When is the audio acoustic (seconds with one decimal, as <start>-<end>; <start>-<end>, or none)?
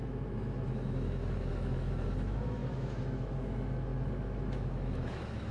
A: none